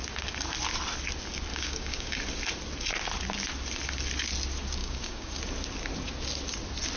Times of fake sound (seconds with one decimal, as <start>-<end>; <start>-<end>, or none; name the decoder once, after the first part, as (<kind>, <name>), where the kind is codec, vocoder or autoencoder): 1.5-2.2 (codec, DAC); 4.8-5.4